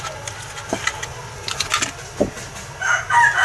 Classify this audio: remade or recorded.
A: recorded